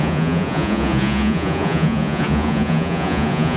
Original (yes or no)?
no